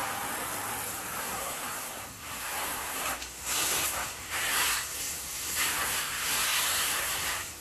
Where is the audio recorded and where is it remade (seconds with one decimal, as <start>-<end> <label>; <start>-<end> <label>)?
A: 0.0-1.2 recorded; 1.2-7.6 remade